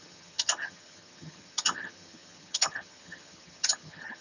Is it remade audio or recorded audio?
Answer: remade